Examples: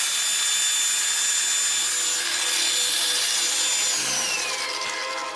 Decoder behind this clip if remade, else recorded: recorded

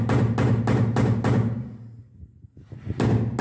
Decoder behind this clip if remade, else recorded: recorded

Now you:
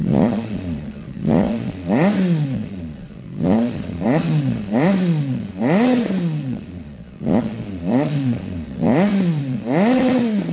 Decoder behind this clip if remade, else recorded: remade, vocoder, Vocos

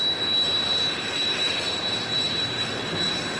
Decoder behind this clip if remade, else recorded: recorded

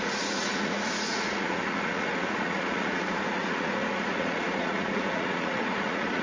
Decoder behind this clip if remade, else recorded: remade, vocoder, Vocos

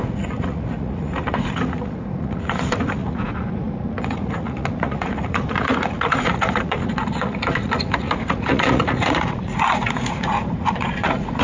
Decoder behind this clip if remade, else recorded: remade, vocoder, Vocos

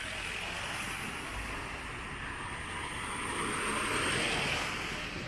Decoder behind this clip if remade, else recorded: recorded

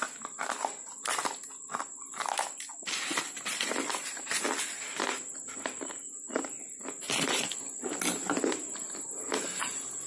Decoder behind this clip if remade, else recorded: recorded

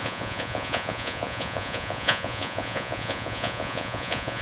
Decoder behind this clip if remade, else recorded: remade, vocoder, Vocos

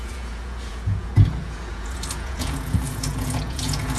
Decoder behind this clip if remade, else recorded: remade, vocoder, Vocos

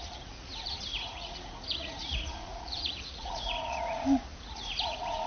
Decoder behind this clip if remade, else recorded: remade, vocoder, Vocos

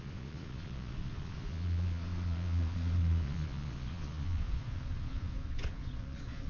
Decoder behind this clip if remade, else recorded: remade, vocoder, Vocos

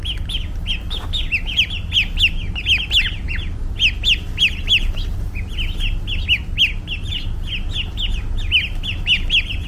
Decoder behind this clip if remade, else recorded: recorded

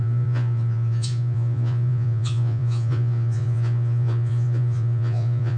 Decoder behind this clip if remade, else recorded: remade, vocoder, Vocos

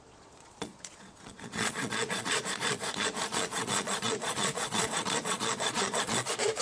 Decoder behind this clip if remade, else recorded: remade, vocoder, Vocos